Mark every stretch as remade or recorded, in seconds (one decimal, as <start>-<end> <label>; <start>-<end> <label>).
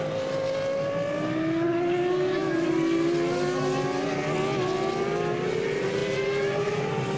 0.0-7.2 recorded